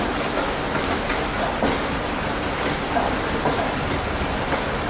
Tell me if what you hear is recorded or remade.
recorded